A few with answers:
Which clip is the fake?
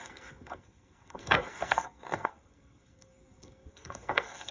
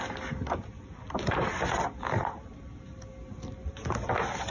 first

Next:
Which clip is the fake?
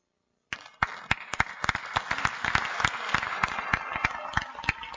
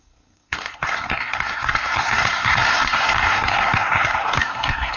second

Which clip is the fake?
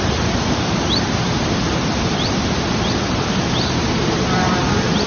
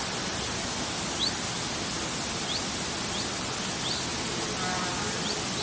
first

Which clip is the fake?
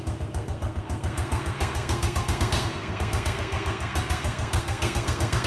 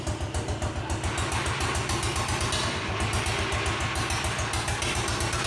first